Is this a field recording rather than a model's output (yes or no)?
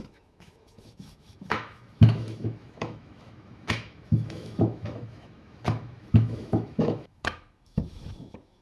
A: no